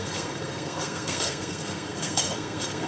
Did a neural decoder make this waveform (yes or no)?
yes